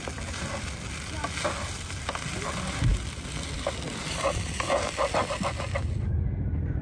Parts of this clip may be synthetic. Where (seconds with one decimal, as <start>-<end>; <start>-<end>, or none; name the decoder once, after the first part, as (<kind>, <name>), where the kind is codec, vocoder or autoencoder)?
none